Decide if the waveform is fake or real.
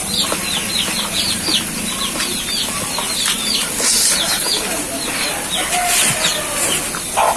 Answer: real